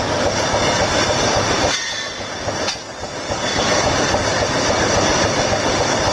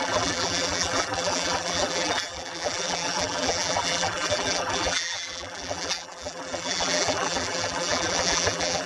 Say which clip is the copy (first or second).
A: second